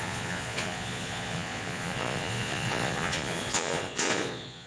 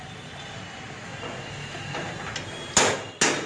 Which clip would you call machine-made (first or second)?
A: first